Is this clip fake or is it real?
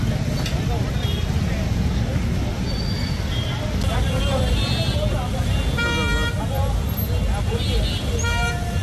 real